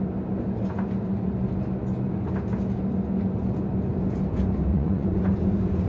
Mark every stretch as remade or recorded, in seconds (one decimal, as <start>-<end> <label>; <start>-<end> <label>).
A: 0.0-4.7 recorded; 4.7-5.2 remade; 5.2-5.9 recorded